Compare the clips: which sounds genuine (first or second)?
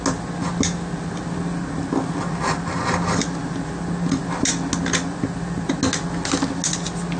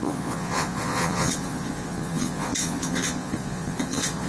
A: first